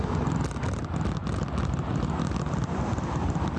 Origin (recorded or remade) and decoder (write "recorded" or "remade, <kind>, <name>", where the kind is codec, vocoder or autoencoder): recorded